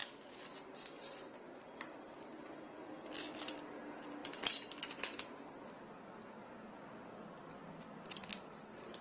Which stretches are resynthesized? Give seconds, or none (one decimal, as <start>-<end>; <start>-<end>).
none